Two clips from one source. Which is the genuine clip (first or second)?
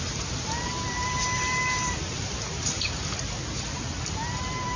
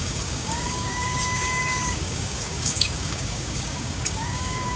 first